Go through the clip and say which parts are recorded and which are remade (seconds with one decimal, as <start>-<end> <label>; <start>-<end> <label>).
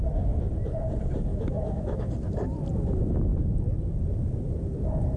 0.0-1.3 recorded; 1.3-2.1 remade; 2.1-5.2 recorded